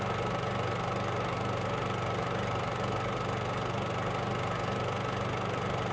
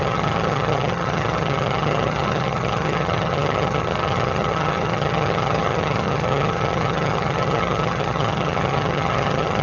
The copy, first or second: second